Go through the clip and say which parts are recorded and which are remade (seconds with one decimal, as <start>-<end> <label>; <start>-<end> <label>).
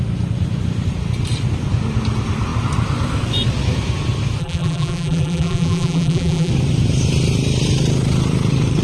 0.0-4.4 recorded; 4.4-6.5 remade; 6.5-8.8 recorded